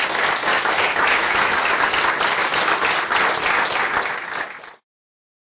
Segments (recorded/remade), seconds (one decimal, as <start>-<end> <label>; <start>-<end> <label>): 0.0-0.5 recorded; 0.5-1.7 remade; 1.7-5.5 recorded